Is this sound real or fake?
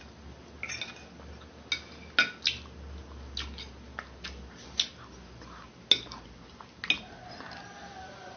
real